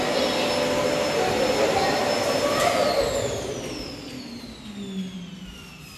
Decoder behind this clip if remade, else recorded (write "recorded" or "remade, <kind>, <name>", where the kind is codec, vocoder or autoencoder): recorded